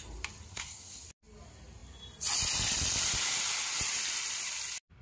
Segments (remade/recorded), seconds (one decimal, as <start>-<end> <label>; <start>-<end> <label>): 0.0-0.5 recorded; 0.5-1.0 remade; 1.0-5.0 recorded